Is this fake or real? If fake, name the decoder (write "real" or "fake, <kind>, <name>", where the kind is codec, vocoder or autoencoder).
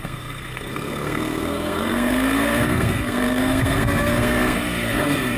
fake, codec, SNAC